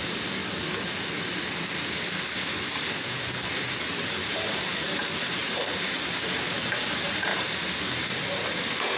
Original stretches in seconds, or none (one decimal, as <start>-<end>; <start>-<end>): 0.4-3.8